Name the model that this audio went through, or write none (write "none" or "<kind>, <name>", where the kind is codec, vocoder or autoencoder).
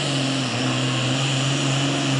none